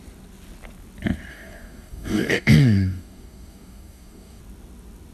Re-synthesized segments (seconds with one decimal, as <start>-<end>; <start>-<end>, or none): 1.3-4.4